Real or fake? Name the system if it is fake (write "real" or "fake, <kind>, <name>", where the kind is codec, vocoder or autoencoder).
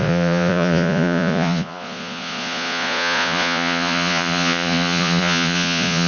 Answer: fake, vocoder, Vocos